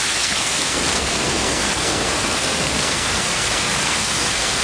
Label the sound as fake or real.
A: fake